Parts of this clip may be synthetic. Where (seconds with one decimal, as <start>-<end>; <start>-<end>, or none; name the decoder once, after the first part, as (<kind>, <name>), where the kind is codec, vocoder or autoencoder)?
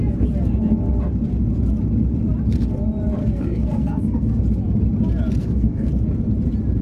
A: 3.2-4.4 (codec, SNAC); 5.4-5.9